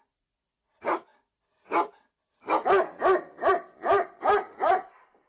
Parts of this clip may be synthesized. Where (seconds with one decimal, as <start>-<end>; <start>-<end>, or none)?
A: 0.0-1.1; 3.5-5.3